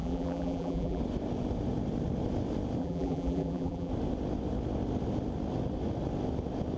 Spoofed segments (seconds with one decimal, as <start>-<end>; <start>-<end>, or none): 0.0-1.0; 2.8-3.9